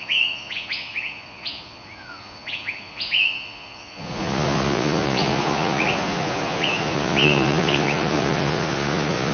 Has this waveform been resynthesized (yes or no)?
yes